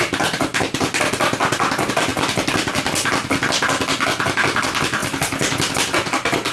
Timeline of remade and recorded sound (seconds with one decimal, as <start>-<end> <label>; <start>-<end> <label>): 0.0-6.5 recorded